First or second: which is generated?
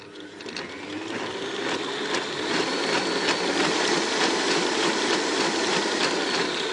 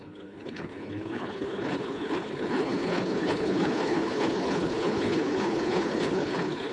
second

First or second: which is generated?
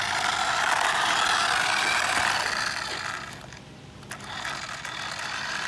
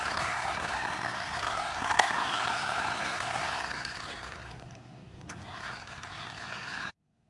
second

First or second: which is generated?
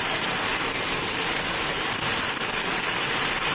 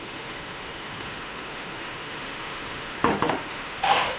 second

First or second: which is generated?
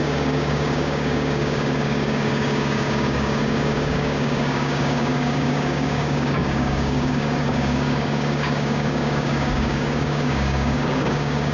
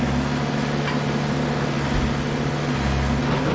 first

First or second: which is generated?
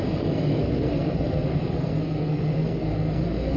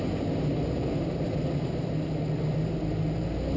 first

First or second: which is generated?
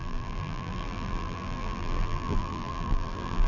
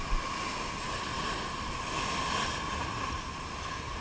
first